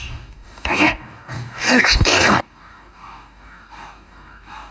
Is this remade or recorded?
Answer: remade